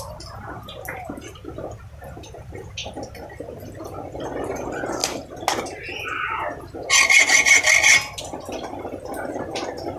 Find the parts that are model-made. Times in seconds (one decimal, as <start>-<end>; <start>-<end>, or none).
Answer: none